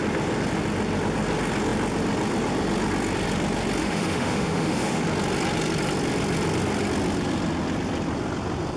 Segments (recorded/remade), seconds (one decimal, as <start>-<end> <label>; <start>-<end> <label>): 0.0-3.8 recorded; 3.8-5.0 remade; 5.0-8.8 recorded